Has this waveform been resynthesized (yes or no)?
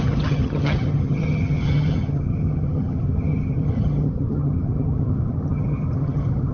yes